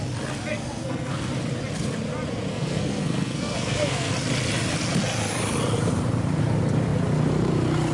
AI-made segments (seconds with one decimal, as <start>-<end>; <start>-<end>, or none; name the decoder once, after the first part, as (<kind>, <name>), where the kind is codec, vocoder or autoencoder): 0.5-1.3 (codec, SNAC); 2.5-4.1

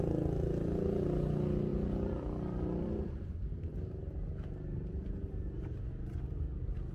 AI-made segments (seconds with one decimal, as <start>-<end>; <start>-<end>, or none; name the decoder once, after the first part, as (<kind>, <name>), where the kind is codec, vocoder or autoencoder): 1.7-3.1 (vocoder, BigVGAN v2)

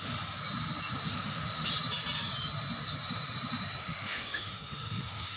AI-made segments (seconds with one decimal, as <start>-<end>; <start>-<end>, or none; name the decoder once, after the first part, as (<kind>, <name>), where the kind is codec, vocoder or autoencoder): 1.1-1.7 (autoencoder, DAC-VAE); 3.8-5.4

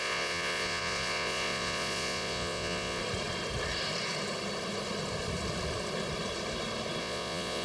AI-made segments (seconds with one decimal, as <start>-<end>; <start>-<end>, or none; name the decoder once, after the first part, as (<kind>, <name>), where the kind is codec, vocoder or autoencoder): 0.0-3.0 (vocoder, Vocos); 7.0-7.6

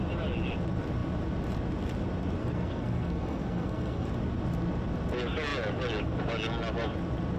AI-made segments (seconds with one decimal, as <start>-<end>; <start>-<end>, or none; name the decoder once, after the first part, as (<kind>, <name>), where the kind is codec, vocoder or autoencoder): 2.4-4.1 (codec, SNAC)